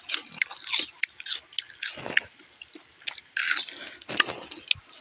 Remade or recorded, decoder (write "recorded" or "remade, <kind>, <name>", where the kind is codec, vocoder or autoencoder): recorded